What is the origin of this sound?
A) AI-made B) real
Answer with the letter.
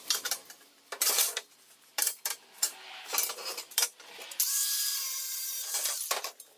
A